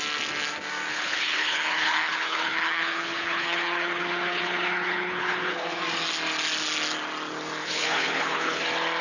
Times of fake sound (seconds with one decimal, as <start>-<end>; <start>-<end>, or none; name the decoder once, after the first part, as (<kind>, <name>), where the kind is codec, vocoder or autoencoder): 0.9-5.8 (codec, HILCodec); 7.6-8.6